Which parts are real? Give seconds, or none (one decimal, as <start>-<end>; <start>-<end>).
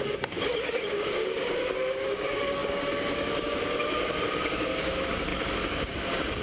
none